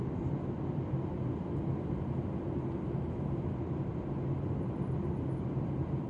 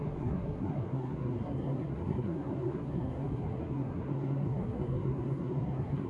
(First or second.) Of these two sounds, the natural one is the first